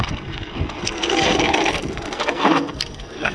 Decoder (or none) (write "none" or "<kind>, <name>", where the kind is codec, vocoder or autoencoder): codec, SNAC